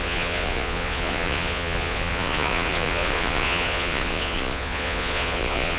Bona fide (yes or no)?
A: no